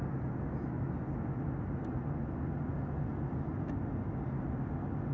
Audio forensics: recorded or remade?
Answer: recorded